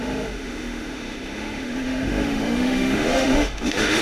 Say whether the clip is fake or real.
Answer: fake